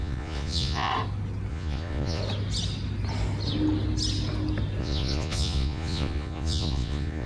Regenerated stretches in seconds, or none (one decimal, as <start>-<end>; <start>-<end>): 0.0-0.9; 1.5-2.2; 4.8-7.3